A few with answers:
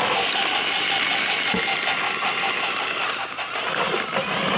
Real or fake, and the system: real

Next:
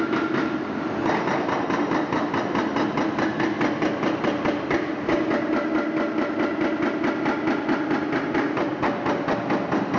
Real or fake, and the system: real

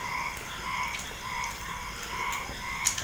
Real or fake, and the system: real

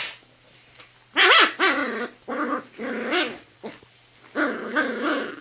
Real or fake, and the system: real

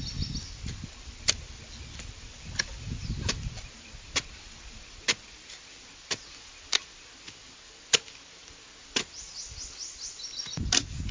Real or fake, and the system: real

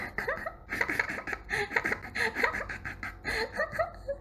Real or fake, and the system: real